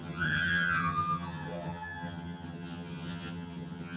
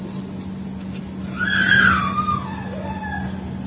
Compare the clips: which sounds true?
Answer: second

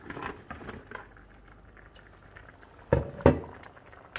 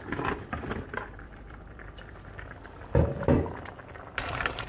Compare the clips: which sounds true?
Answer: first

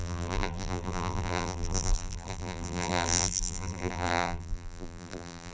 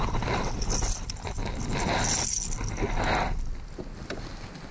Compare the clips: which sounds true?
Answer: second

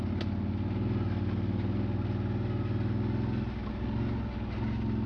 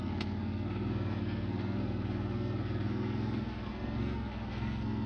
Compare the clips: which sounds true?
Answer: first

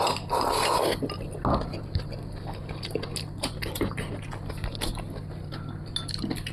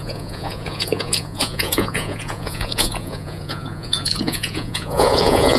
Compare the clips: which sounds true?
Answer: first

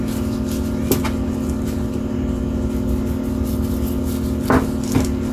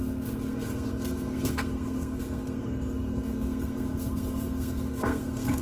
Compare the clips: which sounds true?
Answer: first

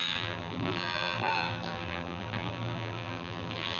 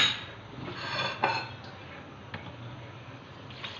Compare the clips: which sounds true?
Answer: second